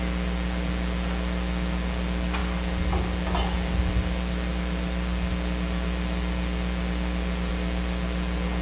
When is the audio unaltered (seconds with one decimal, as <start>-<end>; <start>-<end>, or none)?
0.0-8.6